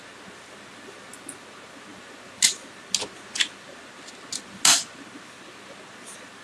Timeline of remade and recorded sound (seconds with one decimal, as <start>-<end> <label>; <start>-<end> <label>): 0.0-6.4 recorded